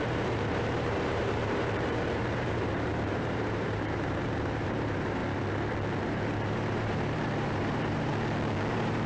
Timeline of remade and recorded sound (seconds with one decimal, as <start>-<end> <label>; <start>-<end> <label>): 0.0-5.2 remade; 5.2-6.0 recorded; 6.0-8.1 remade; 8.1-8.7 recorded; 8.7-9.1 remade